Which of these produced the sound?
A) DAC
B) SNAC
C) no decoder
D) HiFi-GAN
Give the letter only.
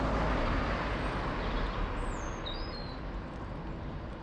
C